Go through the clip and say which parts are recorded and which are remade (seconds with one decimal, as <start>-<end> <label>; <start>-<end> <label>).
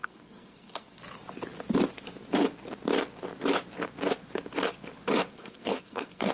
0.0-1.0 remade; 1.0-5.3 recorded; 5.3-6.3 remade